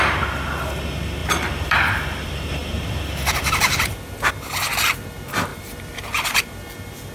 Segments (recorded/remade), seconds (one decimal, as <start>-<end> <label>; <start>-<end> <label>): 0.0-1.2 recorded; 1.2-4.2 remade; 4.2-5.5 recorded; 5.5-6.4 remade; 6.4-7.1 recorded

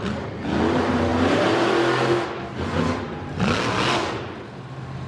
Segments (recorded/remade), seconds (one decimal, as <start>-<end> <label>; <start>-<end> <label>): 0.0-5.1 recorded

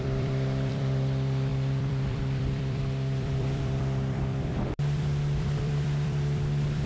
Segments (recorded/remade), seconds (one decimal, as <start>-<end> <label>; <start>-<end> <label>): 0.0-6.9 remade